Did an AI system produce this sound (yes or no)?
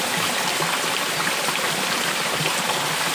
no